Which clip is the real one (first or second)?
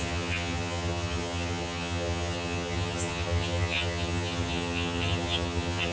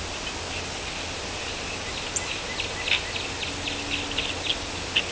second